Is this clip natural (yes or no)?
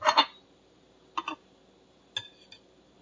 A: yes